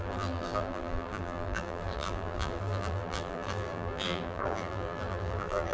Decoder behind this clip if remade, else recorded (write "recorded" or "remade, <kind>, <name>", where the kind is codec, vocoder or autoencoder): remade, vocoder, BigVGAN v2